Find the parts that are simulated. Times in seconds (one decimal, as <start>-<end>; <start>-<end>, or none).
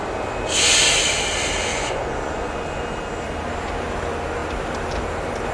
1.7-2.8